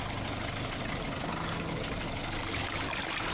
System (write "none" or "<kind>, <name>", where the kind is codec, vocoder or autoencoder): none